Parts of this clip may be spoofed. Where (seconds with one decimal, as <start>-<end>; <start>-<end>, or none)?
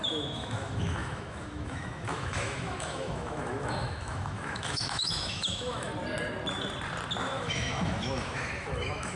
0.0-5.9; 7.2-9.2